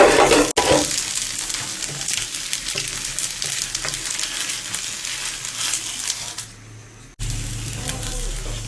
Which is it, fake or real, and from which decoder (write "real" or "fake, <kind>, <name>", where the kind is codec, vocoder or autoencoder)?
real